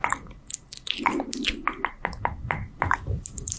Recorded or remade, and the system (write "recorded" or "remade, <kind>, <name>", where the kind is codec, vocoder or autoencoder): recorded